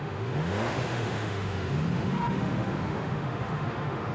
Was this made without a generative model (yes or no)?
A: no